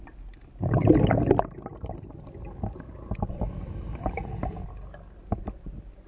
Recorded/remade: recorded